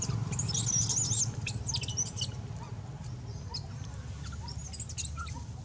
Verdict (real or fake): real